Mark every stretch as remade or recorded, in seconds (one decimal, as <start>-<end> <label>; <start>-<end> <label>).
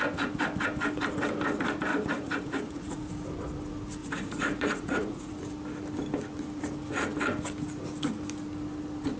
0.0-1.9 recorded; 1.9-3.1 remade; 3.1-4.0 recorded; 4.0-5.3 remade; 5.3-9.2 recorded